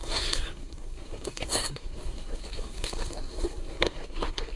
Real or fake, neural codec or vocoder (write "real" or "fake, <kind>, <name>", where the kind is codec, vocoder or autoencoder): fake, codec, SNAC